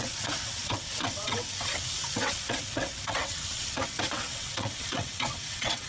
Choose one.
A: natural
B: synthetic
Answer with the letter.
B